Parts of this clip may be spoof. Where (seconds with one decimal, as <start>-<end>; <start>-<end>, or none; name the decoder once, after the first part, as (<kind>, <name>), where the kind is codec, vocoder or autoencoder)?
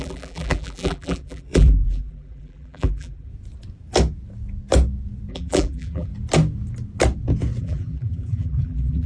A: 0.0-3.3 (vocoder, BigVGAN v2); 5.3-6.1; 7.6-9.1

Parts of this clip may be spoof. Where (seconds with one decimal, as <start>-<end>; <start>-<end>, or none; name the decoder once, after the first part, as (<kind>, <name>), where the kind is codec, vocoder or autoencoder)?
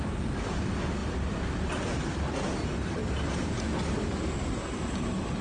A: 1.0-3.5 (vocoder, BigVGAN v2)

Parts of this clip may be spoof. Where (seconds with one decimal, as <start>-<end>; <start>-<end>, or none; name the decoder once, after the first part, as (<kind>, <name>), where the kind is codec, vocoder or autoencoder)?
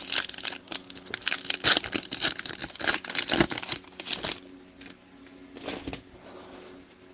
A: none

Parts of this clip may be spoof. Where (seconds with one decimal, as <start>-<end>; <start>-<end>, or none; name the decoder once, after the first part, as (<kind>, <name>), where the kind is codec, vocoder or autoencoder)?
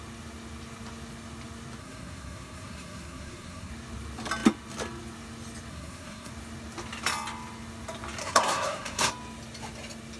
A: 1.8-3.7 (codec, SNAC); 5.7-6.3; 8.2-9.1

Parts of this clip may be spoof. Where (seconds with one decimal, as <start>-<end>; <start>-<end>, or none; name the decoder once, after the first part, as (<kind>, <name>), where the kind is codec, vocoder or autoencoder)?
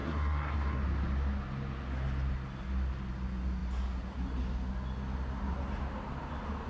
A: 0.0-0.8 (codec, SNAC)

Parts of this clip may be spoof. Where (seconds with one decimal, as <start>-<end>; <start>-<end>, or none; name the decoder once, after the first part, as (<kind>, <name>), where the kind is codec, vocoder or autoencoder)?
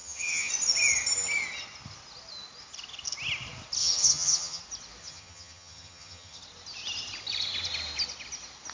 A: 0.0-0.5 (vocoder, HiFi-GAN); 3.8-4.6; 5.0-6.4